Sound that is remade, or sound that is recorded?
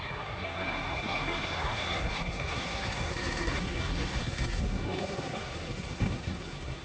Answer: remade